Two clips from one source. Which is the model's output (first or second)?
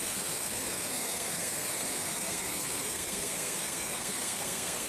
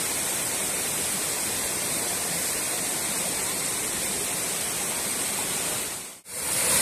first